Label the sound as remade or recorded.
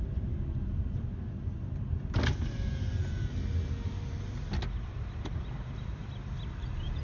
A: recorded